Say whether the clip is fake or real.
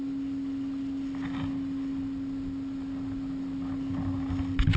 real